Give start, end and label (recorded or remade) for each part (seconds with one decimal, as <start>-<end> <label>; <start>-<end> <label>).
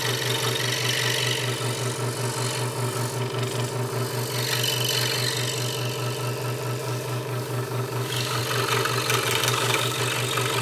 0.0-6.8 recorded; 6.8-8.4 remade; 8.4-9.5 recorded; 9.5-10.0 remade; 10.0-10.6 recorded